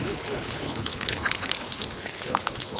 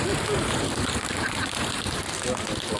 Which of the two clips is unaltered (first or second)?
second